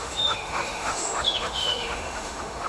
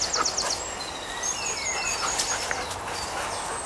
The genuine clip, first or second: second